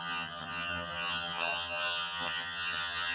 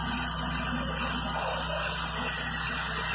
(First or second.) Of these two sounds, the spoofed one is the first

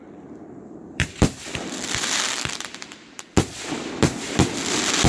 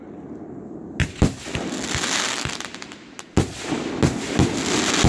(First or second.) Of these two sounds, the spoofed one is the first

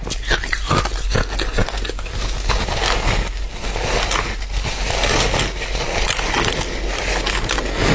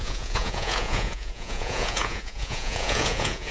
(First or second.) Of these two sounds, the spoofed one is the second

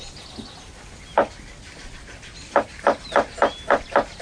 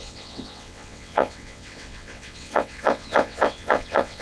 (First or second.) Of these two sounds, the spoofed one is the second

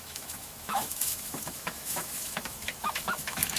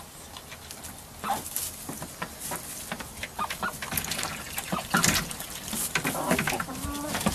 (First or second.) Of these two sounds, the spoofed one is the first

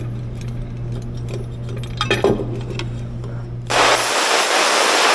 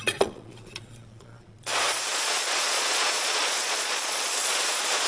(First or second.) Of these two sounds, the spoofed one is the second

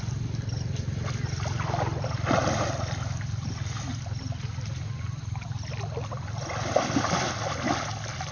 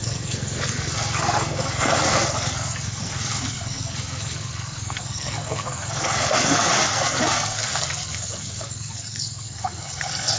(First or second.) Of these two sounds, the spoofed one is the second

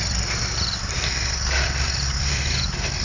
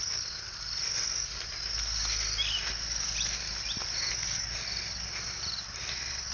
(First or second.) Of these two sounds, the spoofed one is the first